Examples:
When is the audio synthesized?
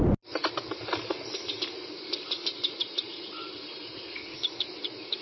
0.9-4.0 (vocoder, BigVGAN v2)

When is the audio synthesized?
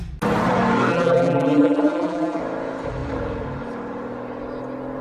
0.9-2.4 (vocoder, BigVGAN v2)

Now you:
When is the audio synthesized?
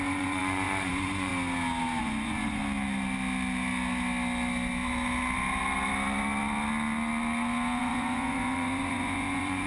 0.0-1.3 (vocoder, Vocos); 2.0-2.6; 7.8-9.7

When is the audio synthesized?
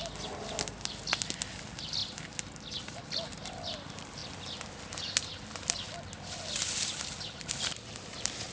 none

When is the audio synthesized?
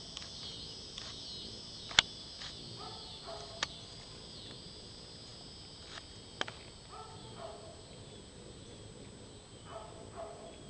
none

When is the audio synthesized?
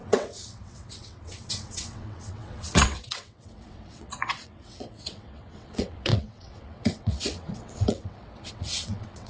0.0-9.3 (vocoder, WaveNeXt)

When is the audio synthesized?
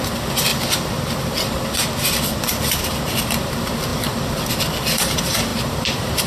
0.0-0.5 (vocoder, BigVGAN v2); 1.1-1.8; 2.4-6.3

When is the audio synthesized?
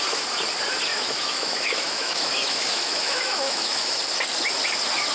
0.9-4.0 (autoencoder, DAC-VAE)